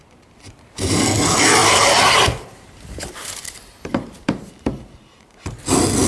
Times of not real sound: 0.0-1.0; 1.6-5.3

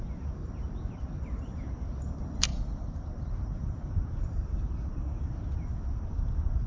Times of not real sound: 2.5-4.2